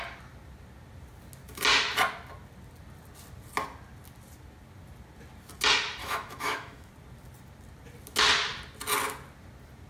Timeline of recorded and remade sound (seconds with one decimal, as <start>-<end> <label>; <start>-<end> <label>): 0.0-6.0 recorded; 6.0-6.9 remade; 6.9-9.9 recorded